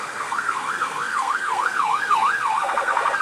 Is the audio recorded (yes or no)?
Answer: no